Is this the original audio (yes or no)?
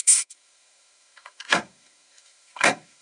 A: no